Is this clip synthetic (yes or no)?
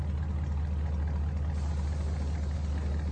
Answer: no